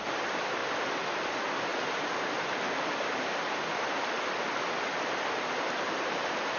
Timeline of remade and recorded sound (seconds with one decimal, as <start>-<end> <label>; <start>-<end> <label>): 0.0-0.6 remade; 0.6-1.2 recorded; 1.2-1.7 remade; 1.7-5.4 recorded; 5.4-6.6 remade